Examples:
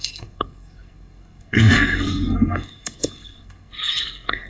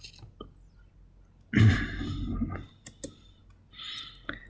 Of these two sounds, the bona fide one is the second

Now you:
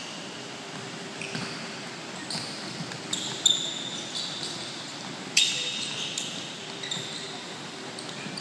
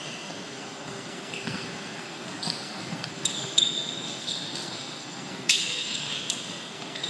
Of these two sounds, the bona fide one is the first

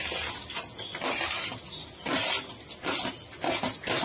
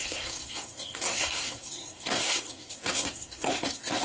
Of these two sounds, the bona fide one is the first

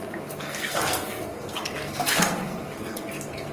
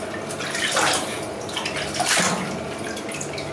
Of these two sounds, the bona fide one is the second